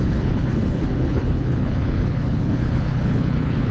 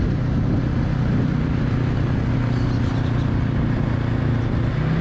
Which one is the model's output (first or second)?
first